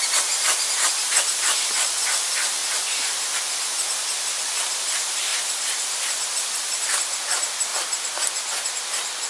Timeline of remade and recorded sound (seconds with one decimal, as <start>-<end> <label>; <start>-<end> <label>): 0.0-2.6 remade; 2.6-3.4 recorded; 3.4-7.7 remade; 7.7-8.3 recorded; 8.3-9.3 remade